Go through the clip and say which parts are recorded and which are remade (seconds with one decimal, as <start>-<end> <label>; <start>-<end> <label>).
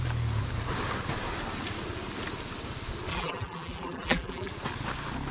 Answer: 0.0-3.1 recorded; 3.1-4.5 remade; 4.5-5.3 recorded